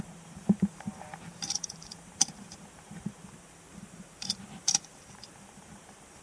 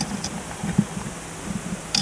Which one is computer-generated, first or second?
first